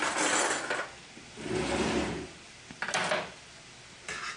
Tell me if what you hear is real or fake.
real